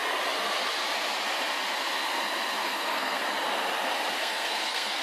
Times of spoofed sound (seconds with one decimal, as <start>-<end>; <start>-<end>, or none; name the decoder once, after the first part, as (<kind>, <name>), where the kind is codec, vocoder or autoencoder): 2.6-3.2 (codec, SNAC); 4.2-5.0